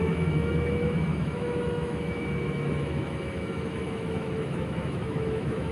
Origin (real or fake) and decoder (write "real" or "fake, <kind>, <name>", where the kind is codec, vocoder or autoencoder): fake, autoencoder, DAC-VAE